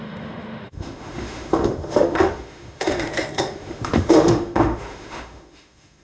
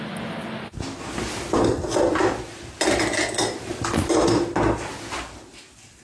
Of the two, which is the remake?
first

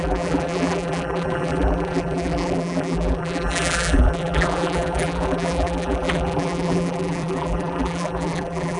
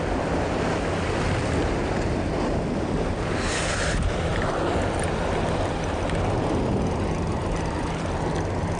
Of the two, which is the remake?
first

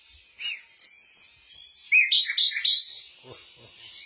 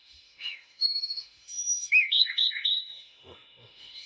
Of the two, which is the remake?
second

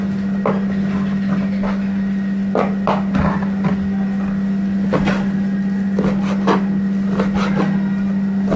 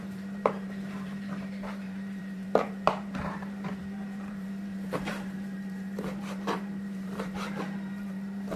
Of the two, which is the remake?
second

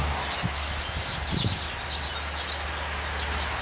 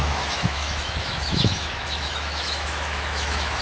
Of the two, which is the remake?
second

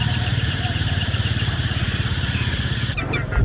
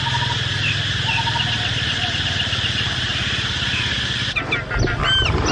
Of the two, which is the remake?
first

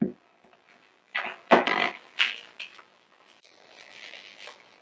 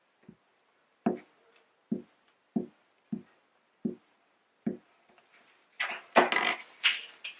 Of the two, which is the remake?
first